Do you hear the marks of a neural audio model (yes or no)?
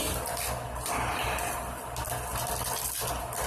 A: no